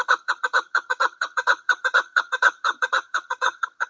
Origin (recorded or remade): remade